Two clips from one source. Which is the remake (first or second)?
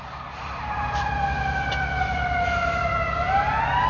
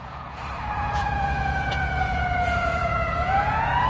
second